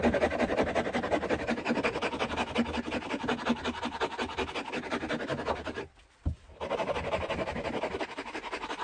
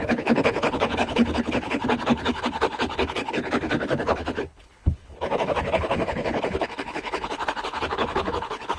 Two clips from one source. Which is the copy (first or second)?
second